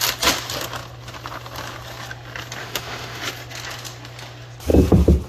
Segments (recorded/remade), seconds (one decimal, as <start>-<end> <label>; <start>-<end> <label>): 0.0-2.6 recorded; 2.6-3.2 remade; 3.2-5.3 recorded